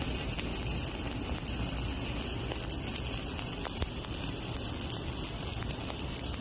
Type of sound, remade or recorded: recorded